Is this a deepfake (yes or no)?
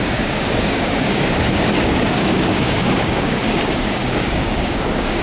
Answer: yes